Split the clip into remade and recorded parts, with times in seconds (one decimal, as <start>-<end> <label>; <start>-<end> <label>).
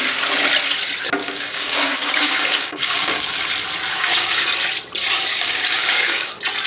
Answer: 0.0-1.2 recorded; 1.2-3.4 remade; 3.4-3.9 recorded; 3.9-4.4 remade; 4.4-5.3 recorded; 5.3-6.3 remade; 6.3-6.7 recorded